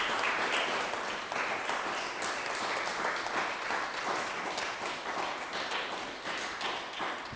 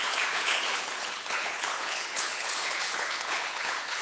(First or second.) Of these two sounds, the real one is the first